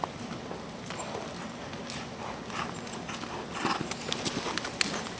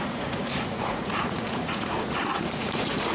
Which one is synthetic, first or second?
second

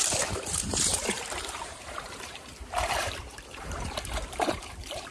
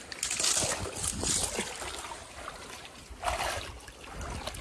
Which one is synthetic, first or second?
first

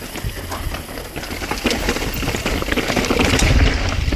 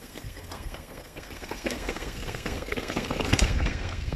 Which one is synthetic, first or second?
second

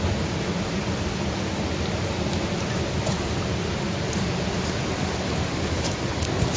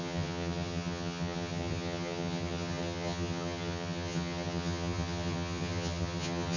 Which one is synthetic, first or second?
second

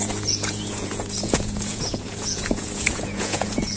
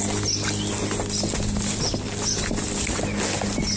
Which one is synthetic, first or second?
first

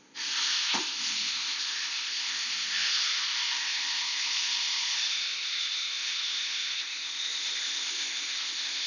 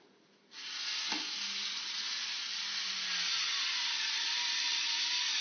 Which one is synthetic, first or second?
first